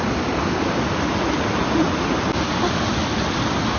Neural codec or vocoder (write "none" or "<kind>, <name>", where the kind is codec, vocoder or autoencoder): none